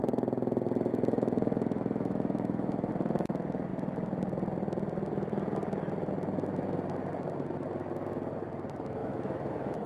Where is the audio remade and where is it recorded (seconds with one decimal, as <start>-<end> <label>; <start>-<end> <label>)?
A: 0.0-0.9 recorded; 0.9-2.9 remade; 2.9-9.0 recorded; 9.0-9.9 remade